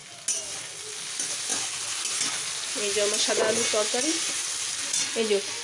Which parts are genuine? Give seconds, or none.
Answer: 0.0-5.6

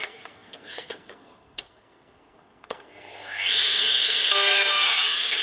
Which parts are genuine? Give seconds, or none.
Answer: none

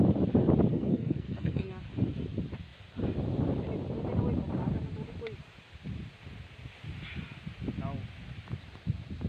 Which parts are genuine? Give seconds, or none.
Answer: 0.0-0.7; 1.7-9.3